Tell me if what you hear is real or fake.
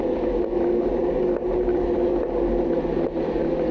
real